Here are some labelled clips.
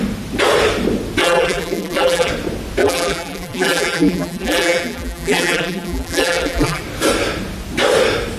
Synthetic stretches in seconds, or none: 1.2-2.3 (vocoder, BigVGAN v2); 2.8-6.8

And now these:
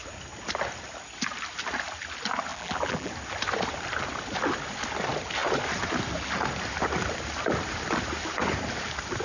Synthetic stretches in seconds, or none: 2.5-3.1 (vocoder, BigVGAN v2)